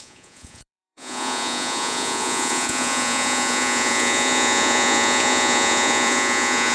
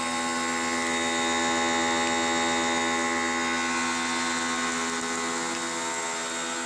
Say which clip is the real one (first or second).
second